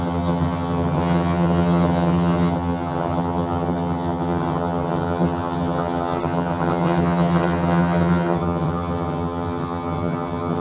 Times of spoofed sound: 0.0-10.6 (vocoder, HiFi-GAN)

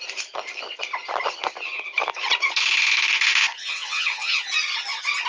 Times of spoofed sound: 3.6-4.4 (vocoder, HiFi-GAN)

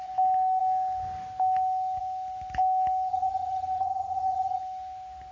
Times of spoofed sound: 3.1-4.6 (vocoder, HiFi-GAN)

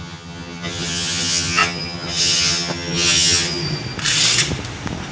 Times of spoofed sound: 0.0-3.6 (vocoder, HiFi-GAN)